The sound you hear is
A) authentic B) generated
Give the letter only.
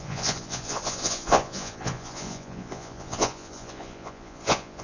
B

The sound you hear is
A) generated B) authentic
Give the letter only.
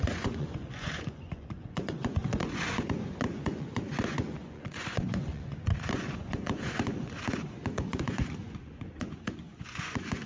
A